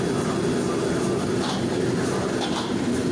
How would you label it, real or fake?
real